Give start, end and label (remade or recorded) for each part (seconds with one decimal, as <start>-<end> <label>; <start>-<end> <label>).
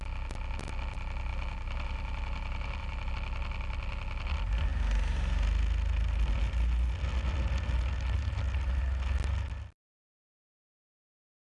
0.0-1.3 recorded; 1.3-3.1 remade; 3.1-11.6 recorded